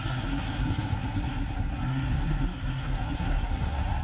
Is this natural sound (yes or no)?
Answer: no